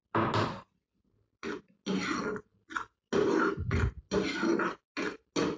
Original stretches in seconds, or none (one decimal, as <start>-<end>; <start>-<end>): 0.0-5.6